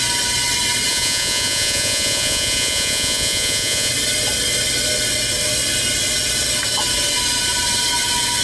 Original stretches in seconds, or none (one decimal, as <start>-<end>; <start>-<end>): 0.0-0.9; 3.9-8.4